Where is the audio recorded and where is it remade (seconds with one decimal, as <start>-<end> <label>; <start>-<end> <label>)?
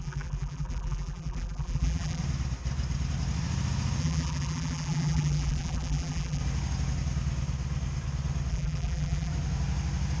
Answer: 0.0-2.2 remade; 2.2-4.0 recorded; 4.0-6.4 remade; 6.4-8.5 recorded; 8.5-9.3 remade; 9.3-10.2 recorded